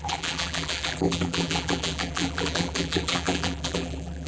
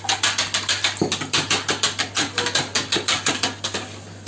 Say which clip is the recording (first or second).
second